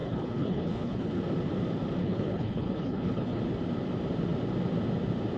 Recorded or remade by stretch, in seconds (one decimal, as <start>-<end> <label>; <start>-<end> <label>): 0.0-1.2 remade; 1.2-2.0 recorded; 2.0-3.4 remade; 3.4-5.4 recorded